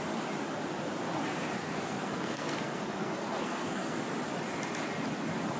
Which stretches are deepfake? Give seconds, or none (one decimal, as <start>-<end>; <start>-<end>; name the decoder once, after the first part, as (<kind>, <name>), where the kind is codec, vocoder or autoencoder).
1.6-4.0 (codec, SNAC)